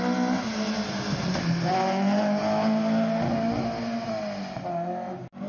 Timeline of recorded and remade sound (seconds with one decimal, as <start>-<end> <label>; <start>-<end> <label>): 0.0-5.5 recorded